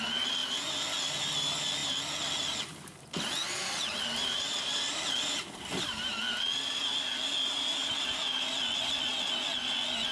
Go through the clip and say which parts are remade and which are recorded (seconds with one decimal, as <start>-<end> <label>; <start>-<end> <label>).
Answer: 0.0-10.1 recorded